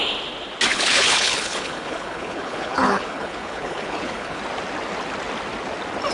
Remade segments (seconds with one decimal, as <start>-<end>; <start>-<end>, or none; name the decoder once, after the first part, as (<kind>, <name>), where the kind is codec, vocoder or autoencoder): 0.7-4.4 (codec, HILCodec)

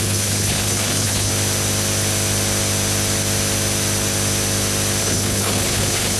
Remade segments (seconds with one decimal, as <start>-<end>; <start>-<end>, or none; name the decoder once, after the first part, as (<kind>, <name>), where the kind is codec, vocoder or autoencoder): 0.0-1.3 (codec, HILCodec); 5.0-6.2

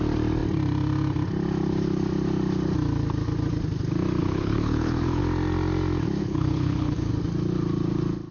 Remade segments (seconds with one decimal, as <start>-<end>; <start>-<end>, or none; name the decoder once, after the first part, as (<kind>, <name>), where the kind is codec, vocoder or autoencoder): 4.2-5.2 (codec, HILCodec); 6.2-7.1

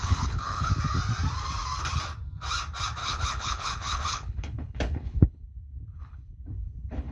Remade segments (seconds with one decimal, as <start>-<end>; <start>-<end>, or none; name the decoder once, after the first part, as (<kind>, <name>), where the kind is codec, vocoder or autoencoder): 0.0-0.7 (codec, HILCodec); 3.0-7.1

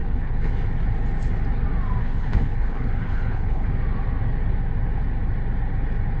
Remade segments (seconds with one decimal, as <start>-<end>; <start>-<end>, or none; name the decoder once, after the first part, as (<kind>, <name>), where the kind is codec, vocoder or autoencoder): 0.0-0.5 (codec, HILCodec); 2.0-3.7

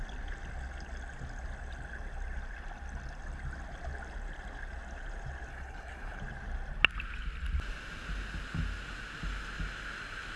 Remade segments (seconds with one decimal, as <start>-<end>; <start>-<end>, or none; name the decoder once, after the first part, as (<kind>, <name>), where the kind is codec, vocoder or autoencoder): 5.5-6.2 (codec, HILCodec)

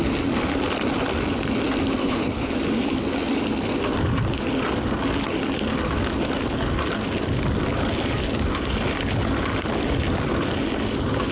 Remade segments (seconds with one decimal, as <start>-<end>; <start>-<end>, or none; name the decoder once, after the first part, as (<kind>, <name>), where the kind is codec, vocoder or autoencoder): 2.0-2.5 (codec, HILCodec)